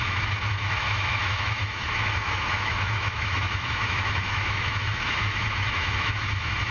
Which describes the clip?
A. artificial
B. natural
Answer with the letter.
A